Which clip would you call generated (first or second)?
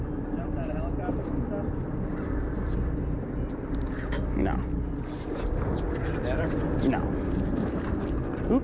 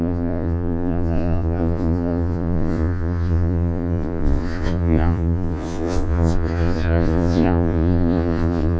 second